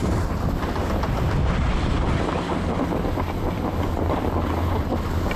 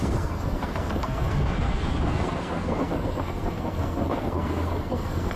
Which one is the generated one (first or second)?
second